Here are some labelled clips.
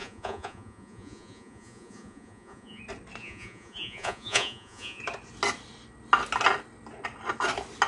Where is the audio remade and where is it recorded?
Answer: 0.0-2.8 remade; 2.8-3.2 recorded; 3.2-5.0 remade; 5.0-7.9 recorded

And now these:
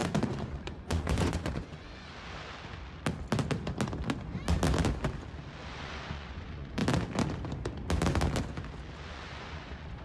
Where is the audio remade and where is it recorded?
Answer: 0.0-2.1 remade; 2.1-5.7 recorded; 5.7-6.8 remade; 6.8-9.1 recorded; 9.1-10.0 remade

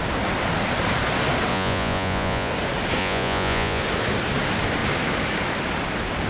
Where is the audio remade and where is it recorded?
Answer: 0.0-1.5 recorded; 1.5-2.5 remade; 2.5-3.0 recorded; 3.0-3.8 remade; 3.8-6.3 recorded

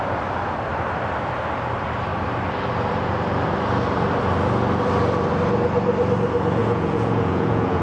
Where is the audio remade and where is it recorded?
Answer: 0.0-6.6 recorded; 6.6-7.8 remade